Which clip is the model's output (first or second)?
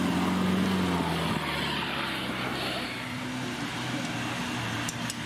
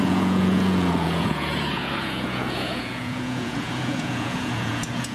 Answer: second